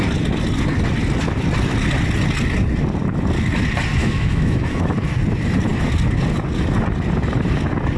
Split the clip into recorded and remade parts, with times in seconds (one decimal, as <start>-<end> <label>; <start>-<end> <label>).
0.0-4.0 recorded; 4.0-4.8 remade; 4.8-8.0 recorded